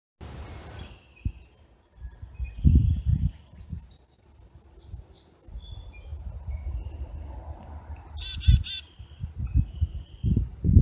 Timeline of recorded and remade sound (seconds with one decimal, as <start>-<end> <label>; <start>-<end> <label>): 0.0-10.8 recorded